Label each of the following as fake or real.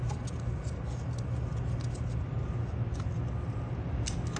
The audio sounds real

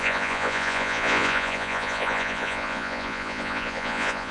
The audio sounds fake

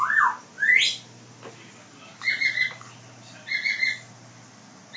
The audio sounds real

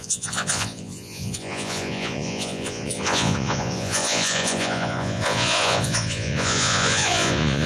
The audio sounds fake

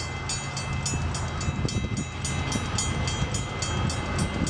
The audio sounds real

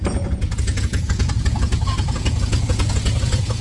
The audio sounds fake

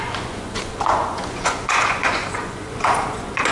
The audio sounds fake